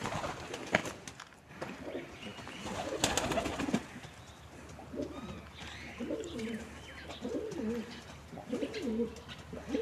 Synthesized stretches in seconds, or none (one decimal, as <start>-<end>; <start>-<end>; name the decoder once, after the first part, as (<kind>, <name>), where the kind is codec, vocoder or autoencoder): none